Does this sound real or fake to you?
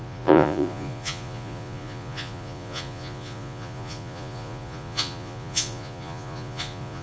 fake